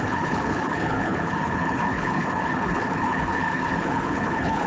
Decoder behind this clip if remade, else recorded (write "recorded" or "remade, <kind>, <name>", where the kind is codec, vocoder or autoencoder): remade, codec, HILCodec